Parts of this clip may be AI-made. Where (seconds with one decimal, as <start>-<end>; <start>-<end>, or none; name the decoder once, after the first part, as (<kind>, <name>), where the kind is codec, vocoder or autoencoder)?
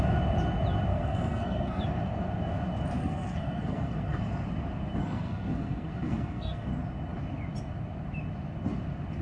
0.9-1.8 (codec, SNAC); 3.0-4.2; 5.0-6.7